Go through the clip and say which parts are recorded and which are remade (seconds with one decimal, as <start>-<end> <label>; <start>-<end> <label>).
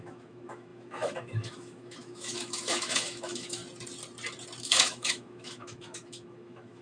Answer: 0.0-3.6 remade; 3.6-4.6 recorded; 4.6-6.8 remade